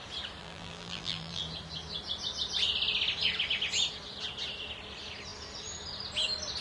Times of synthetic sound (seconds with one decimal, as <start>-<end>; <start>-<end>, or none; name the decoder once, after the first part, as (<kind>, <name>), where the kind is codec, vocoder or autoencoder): 0.4-1.4 (vocoder, BigVGAN v2)